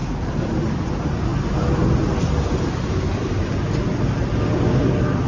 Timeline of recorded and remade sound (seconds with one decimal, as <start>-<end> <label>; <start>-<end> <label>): 0.0-1.3 recorded; 1.3-4.5 remade; 4.5-5.3 recorded